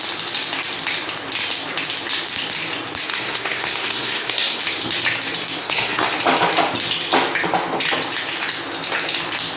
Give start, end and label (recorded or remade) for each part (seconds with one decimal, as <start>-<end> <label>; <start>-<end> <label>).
0.0-3.1 recorded; 3.1-4.6 remade; 4.6-5.6 recorded; 5.6-6.1 remade; 6.1-9.6 recorded